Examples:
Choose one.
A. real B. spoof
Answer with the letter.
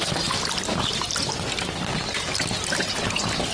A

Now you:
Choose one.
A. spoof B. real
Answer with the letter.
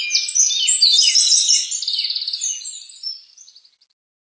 B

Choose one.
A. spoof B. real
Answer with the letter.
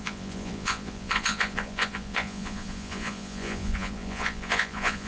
A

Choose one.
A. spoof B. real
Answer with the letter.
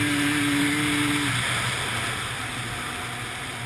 B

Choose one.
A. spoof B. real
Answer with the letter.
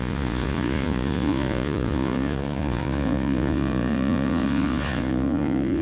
A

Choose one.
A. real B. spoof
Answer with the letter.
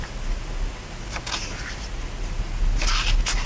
A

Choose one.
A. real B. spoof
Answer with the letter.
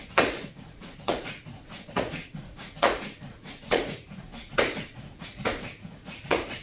B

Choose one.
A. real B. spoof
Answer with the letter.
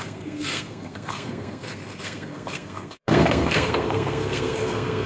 B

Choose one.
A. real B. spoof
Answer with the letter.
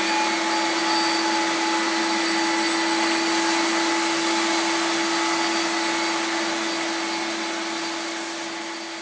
A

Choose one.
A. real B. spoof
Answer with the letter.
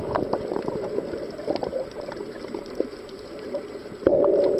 B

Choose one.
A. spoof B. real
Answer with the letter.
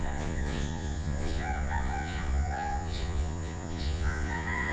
A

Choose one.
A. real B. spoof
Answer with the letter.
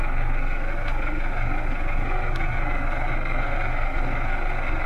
B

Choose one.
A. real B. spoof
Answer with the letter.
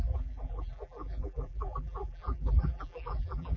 B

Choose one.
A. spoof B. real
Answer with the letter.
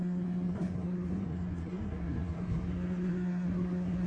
A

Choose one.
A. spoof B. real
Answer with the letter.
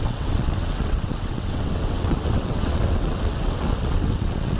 A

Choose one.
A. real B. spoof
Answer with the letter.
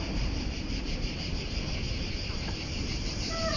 B